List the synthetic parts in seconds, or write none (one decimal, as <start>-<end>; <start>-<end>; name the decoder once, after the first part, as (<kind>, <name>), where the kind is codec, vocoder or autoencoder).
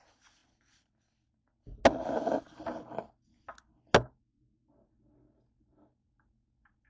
none